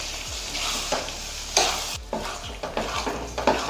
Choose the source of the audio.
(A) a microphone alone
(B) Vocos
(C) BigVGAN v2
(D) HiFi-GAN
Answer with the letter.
A